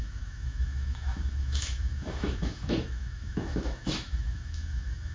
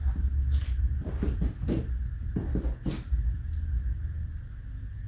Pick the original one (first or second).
second